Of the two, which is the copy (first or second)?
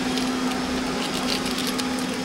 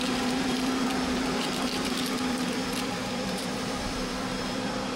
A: second